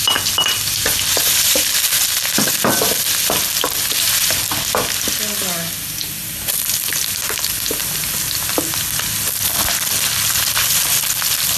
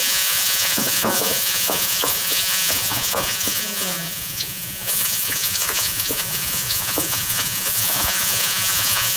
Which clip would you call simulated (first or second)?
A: second